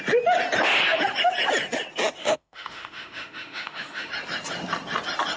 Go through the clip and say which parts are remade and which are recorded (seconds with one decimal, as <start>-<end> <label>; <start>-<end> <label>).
0.0-2.2 recorded; 2.2-4.1 remade; 4.1-5.4 recorded